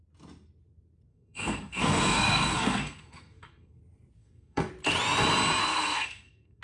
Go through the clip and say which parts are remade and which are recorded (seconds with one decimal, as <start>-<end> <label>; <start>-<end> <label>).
0.0-1.1 recorded; 1.1-3.8 remade; 3.8-4.2 recorded; 4.2-4.7 remade; 4.7-5.6 recorded; 5.6-6.6 remade